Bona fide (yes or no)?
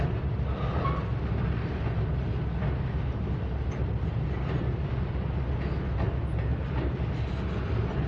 yes